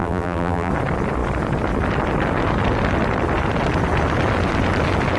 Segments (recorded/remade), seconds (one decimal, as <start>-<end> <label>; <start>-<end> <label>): 0.0-0.7 remade; 0.7-5.2 recorded